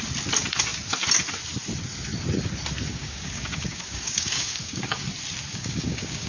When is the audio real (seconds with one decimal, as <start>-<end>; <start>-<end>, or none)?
0.0-2.9; 5.0-5.5